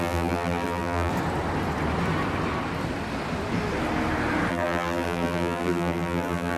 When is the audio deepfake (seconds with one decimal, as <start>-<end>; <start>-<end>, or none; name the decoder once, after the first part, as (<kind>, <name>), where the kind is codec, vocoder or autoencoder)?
0.0-1.1 (vocoder, BigVGAN v2); 4.5-6.6